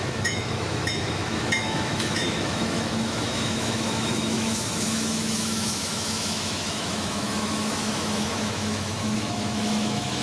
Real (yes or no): no